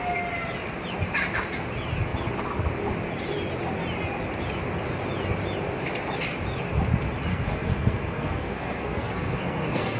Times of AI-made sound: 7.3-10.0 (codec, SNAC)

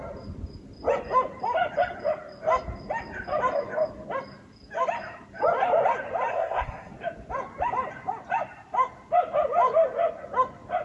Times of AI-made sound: 6.3-6.9 (codec, SNAC)

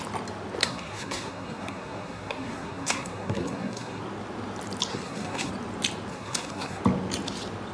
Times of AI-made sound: 0.6-4.0 (codec, SNAC); 4.9-5.5; 6.1-6.8

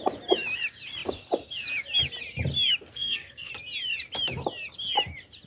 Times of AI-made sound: 2.9-3.5 (codec, SNAC)

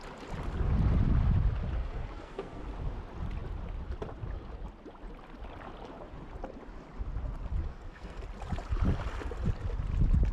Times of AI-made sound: 1.8-2.6 (codec, SNAC); 7.6-8.2

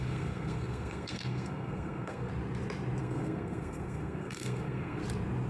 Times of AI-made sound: 0.0-2.3 (codec, SNAC); 3.0-5.0

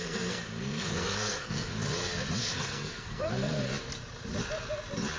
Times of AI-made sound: 0.0-1.7 (codec, SNAC); 2.4-3.7

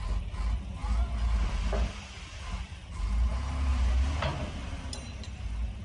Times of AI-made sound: none